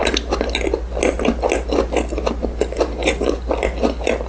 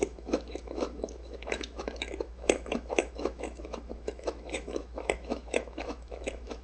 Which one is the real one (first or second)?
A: first